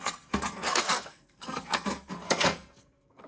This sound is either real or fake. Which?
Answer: fake